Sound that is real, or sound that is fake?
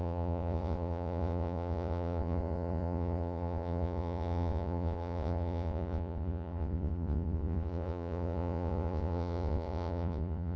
fake